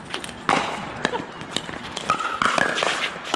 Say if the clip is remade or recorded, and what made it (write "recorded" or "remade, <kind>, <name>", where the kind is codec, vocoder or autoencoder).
recorded